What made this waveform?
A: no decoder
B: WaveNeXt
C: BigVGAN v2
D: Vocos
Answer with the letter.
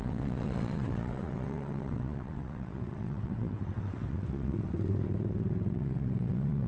B